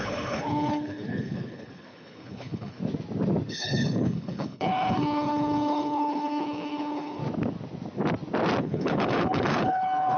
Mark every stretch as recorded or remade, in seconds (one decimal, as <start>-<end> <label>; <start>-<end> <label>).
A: 0.0-2.8 remade; 2.8-3.5 recorded; 3.5-7.2 remade; 7.2-8.6 recorded; 8.6-10.2 remade